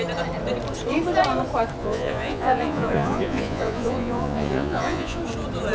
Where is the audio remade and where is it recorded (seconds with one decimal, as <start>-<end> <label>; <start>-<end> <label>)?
0.0-1.8 recorded; 1.8-5.2 remade; 5.2-5.7 recorded